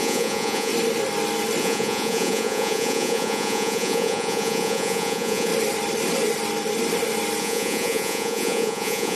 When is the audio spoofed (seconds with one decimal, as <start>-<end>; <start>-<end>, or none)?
0.0-0.7; 1.6-5.5; 7.4-9.2